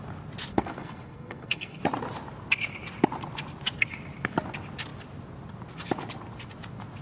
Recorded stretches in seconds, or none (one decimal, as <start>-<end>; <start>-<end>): 0.0-0.5; 1.8-7.0